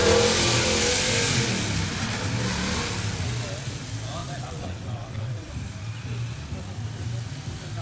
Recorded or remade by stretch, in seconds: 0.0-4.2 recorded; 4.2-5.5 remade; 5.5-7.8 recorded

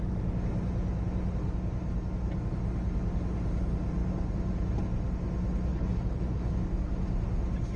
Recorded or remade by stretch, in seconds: 0.0-5.7 recorded; 5.7-6.5 remade; 6.5-7.8 recorded

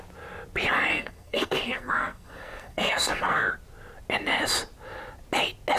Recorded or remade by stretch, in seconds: 0.0-0.9 recorded; 0.9-3.5 remade; 3.5-5.8 recorded

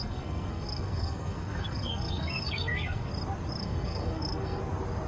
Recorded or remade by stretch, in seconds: 0.0-3.1 remade; 3.1-3.6 recorded; 3.6-4.6 remade; 4.6-5.1 recorded

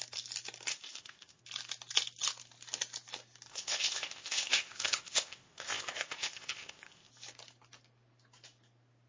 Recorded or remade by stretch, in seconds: 0.0-0.7 recorded; 0.7-1.4 remade; 1.4-3.5 recorded; 3.5-7.1 remade; 7.1-9.1 recorded

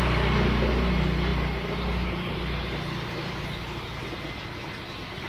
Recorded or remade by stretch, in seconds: 0.0-5.3 recorded